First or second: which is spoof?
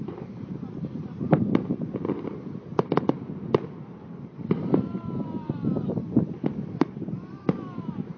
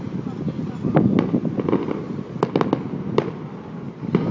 first